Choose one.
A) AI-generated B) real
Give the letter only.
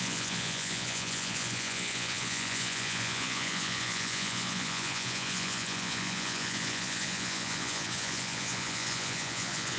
A